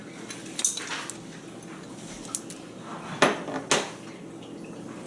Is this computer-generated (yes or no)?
no